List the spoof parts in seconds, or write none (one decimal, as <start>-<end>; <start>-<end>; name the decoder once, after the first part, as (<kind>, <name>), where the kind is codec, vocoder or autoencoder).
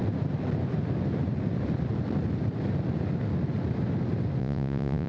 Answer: 4.4-5.1 (vocoder, Vocos)